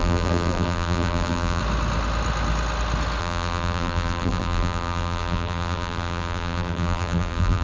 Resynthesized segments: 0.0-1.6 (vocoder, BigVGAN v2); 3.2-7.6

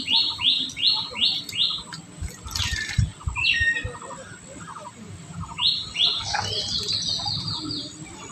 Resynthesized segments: none

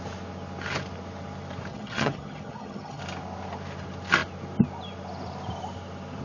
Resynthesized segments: 1.7-3.0 (vocoder, HiFi-GAN)

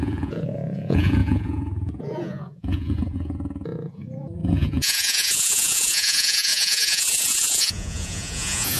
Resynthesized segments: 0.0-8.8 (vocoder, Vocos)

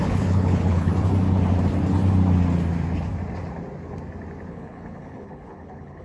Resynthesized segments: 0.0-0.9 (codec, HILCodec); 4.5-6.0